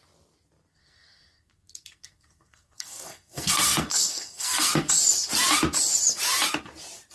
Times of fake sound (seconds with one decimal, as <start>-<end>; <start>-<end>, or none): 0.7-5.0

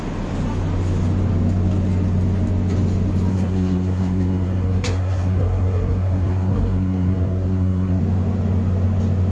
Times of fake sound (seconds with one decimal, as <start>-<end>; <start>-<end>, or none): 3.3-8.0

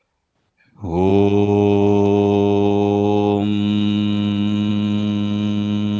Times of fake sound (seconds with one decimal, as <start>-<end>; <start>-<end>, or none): none

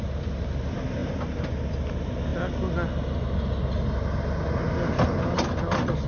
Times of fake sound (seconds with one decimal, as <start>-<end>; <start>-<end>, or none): none

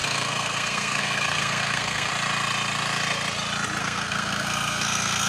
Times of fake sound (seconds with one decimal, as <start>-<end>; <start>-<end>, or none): 0.0-2.1; 3.8-5.3